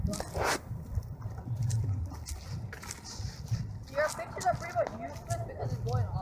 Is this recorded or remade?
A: recorded